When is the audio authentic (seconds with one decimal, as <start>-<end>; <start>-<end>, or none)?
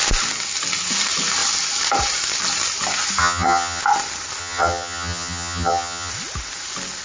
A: 0.0-3.2; 3.8-4.4; 6.1-7.0